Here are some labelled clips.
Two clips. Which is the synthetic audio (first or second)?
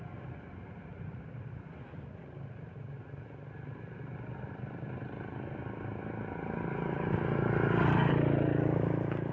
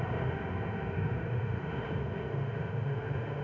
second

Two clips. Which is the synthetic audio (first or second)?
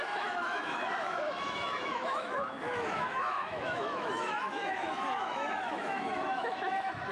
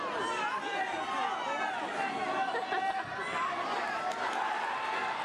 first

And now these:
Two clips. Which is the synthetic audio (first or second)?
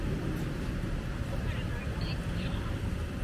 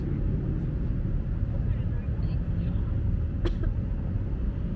first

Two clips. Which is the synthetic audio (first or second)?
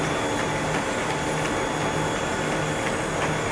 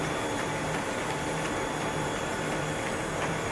second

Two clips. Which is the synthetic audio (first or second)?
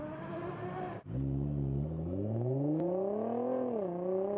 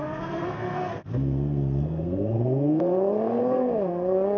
second